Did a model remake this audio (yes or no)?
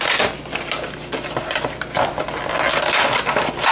no